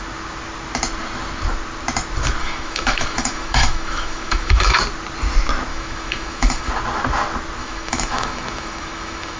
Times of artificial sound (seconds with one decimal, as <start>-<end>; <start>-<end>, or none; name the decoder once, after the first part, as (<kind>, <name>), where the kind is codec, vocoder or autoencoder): 2.4-4.8 (autoencoder, DAC-VAE); 5.7-6.7; 7.6-9.4